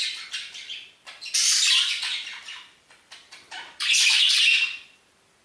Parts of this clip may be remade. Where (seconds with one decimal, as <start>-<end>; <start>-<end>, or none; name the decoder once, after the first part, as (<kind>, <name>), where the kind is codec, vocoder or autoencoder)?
1.9-4.2 (vocoder, BigVGAN v2)